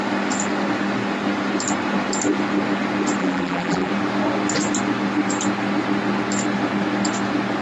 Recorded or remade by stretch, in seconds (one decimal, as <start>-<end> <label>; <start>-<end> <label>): 0.0-3.2 recorded; 3.2-3.9 remade; 3.9-7.6 recorded